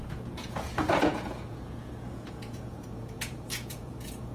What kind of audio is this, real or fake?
fake